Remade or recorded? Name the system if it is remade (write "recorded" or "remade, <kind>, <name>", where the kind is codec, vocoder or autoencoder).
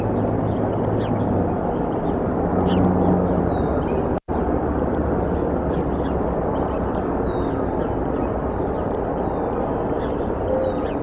recorded